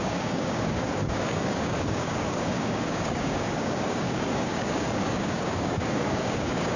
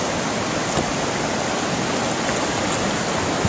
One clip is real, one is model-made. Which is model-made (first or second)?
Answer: first